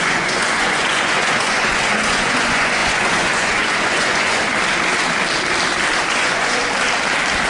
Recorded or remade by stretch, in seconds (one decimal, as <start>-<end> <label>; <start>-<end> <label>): 0.0-4.5 remade; 4.5-6.1 recorded; 6.1-6.6 remade; 6.6-7.5 recorded